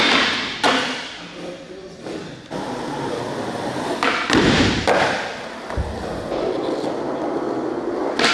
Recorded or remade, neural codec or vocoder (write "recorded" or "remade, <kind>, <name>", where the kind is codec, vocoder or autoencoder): recorded